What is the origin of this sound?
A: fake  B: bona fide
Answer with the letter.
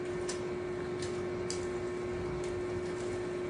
B